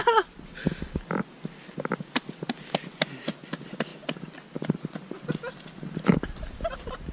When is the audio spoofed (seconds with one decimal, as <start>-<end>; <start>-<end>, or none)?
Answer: none